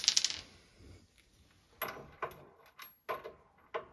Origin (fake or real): real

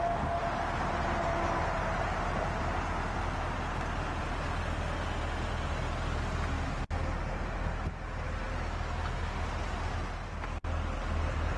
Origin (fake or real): real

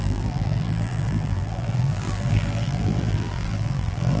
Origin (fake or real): fake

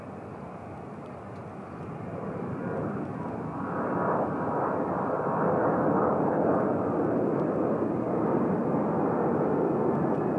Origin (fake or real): real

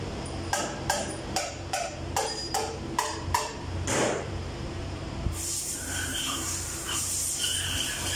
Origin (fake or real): fake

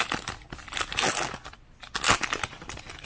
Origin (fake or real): real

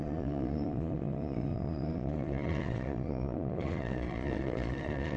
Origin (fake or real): fake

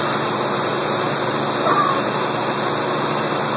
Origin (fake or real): fake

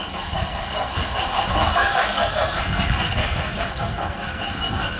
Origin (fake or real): fake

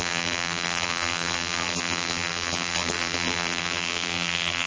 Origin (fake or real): fake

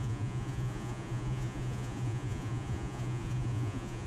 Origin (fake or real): fake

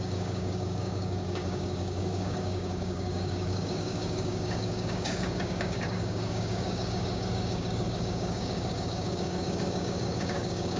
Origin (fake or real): fake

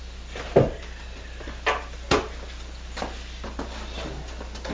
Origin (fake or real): real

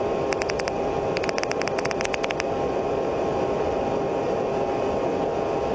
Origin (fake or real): real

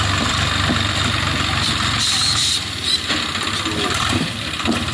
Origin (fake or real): fake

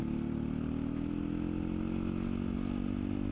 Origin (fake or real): real